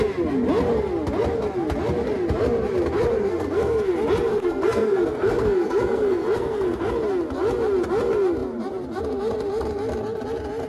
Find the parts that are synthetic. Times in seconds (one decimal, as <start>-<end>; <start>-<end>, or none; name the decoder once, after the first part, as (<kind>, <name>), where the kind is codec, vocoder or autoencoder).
3.1-3.9 (codec, SNAC); 4.3-6.9